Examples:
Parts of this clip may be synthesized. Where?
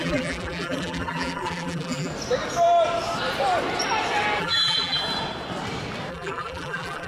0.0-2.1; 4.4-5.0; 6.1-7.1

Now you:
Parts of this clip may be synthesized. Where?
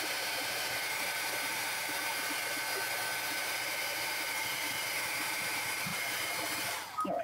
0.0-2.4; 3.2-5.9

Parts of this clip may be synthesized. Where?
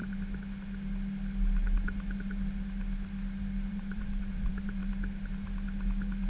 3.7-4.8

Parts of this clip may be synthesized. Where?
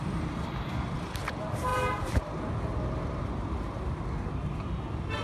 none